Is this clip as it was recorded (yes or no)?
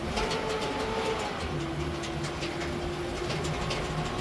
yes